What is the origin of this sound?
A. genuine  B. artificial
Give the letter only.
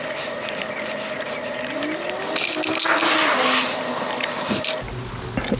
A